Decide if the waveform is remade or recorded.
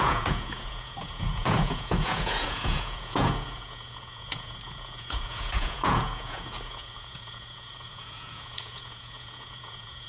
remade